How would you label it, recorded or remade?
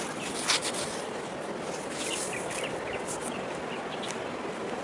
recorded